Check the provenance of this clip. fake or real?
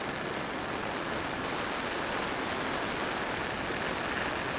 real